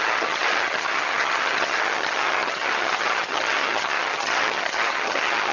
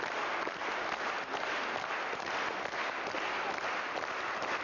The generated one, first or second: first